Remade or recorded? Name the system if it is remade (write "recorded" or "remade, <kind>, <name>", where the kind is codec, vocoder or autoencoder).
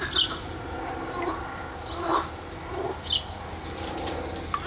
recorded